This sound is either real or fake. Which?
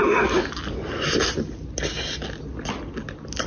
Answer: real